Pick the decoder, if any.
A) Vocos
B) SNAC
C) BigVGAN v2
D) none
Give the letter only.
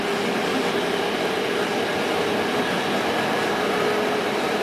D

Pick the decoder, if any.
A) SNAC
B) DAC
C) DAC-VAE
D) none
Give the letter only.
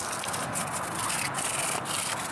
D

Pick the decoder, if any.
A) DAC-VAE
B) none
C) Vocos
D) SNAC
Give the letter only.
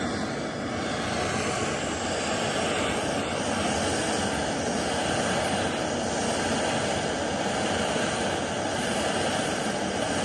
B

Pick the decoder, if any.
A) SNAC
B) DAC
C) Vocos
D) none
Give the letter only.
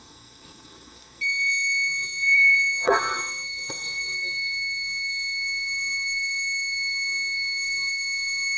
A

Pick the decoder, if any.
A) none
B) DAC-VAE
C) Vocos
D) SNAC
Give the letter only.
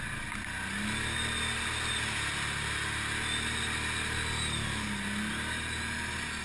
A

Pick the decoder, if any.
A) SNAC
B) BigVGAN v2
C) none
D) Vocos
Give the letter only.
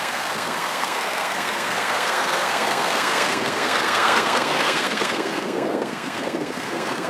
A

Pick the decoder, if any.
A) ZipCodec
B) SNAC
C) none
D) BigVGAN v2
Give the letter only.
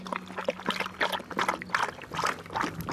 C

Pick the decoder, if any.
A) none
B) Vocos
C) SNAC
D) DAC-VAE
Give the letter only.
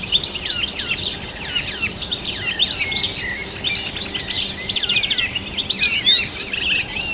A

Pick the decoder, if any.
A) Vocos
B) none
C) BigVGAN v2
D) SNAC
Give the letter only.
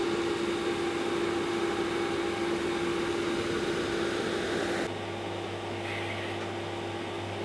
B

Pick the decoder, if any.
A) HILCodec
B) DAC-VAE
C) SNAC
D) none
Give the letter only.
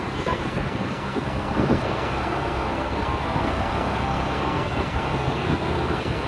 C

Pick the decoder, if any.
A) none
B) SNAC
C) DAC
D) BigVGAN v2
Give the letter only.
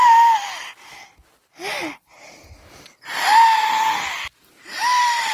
A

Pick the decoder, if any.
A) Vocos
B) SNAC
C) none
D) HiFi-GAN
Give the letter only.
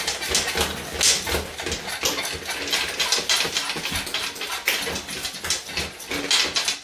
C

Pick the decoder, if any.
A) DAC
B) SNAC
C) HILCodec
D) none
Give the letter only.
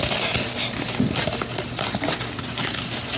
D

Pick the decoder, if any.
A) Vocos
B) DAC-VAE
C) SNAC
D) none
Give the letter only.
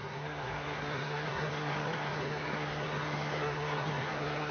C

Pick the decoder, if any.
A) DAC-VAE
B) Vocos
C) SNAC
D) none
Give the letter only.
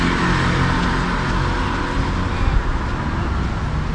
D